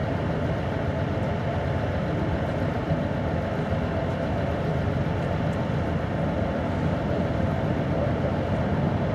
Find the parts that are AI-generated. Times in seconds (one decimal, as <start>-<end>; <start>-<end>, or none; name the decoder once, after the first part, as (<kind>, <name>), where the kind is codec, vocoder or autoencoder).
none